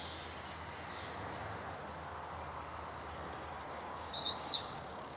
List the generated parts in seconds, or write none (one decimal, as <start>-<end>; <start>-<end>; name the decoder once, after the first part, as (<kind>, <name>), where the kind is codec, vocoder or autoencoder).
3.1-5.2 (codec, DAC)